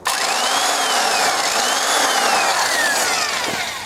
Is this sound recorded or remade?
recorded